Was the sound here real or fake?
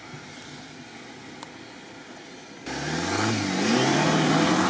real